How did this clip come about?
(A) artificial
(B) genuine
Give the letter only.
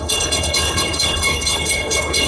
A